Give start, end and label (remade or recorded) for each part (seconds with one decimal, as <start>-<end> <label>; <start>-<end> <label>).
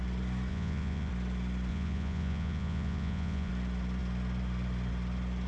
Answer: 0.0-0.5 recorded; 0.5-1.1 remade; 1.1-1.7 recorded; 1.7-3.5 remade; 3.5-5.5 recorded